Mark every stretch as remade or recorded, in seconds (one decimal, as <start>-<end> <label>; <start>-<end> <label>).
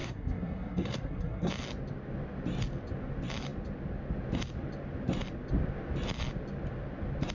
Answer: 0.0-1.5 remade; 1.5-7.3 recorded